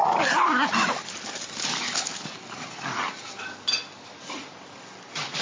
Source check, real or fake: real